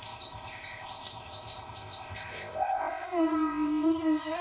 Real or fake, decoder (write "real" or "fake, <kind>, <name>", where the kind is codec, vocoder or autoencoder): fake, codec, ZipCodec